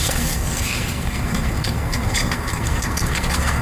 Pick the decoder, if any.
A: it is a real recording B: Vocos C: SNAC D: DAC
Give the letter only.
C